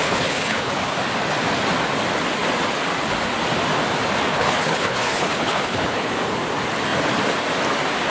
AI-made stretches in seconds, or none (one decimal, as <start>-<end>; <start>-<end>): 0.0-0.9; 4.3-6.1